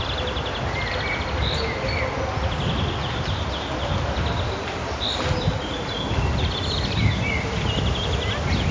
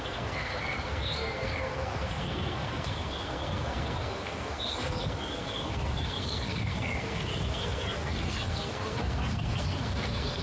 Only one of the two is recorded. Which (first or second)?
first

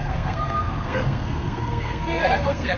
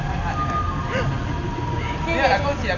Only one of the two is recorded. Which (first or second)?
second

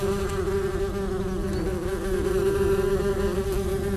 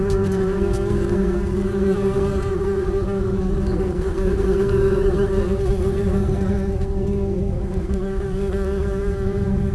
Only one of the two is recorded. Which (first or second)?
first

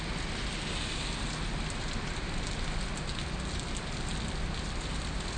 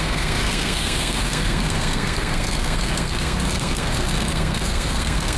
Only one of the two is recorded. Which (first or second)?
first